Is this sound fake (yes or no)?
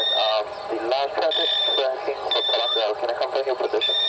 no